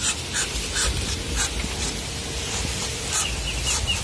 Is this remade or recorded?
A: recorded